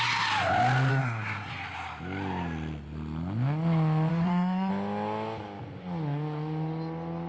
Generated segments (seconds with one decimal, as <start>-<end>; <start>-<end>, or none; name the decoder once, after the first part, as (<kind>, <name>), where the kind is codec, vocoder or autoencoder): 0.9-1.5 (codec, SNAC); 4.1-4.7